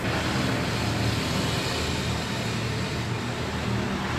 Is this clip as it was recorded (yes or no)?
yes